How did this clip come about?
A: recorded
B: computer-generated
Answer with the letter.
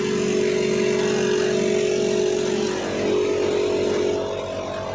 A